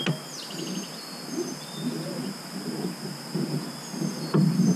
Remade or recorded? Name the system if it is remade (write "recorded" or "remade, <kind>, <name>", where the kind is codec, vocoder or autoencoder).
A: recorded